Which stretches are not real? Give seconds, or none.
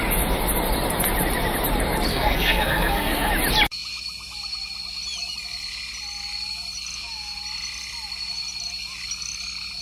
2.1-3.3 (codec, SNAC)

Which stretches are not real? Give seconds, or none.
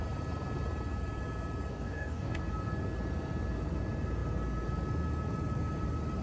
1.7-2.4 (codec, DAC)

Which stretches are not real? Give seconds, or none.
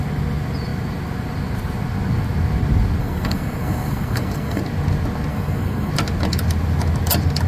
3.0-4.6 (codec, SNAC); 5.3-5.9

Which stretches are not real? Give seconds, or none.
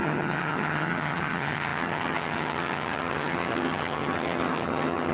0.0-5.1 (vocoder, HiFi-GAN)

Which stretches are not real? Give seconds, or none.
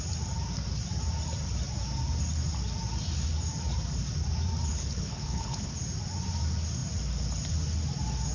4.7-5.7 (codec, HILCodec)